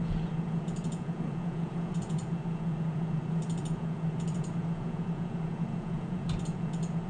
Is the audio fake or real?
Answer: fake